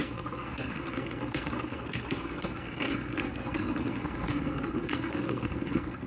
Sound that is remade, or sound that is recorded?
remade